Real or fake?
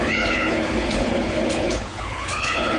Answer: fake